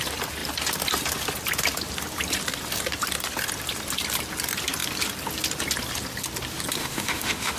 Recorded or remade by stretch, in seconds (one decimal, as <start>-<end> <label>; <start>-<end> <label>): 0.0-6.8 recorded; 6.8-7.6 remade